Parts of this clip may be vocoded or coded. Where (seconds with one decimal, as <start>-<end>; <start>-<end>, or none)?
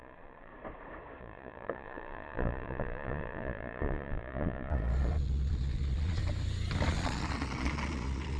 0.0-0.5; 1.2-6.2; 6.9-8.4